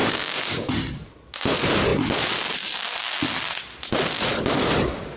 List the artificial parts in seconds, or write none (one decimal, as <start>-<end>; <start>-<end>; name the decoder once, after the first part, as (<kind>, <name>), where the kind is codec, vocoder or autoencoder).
0.0-0.7 (codec, DAC)